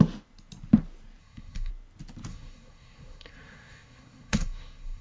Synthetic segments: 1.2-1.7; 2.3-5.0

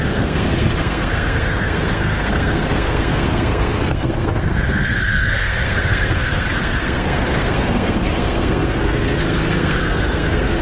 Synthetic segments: 0.0-10.6

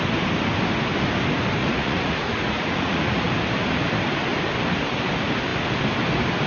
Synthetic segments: 1.6-3.3

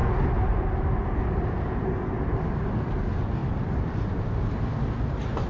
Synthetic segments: none

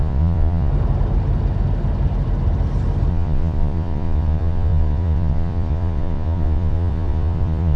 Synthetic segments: 0.0-0.7; 3.1-7.8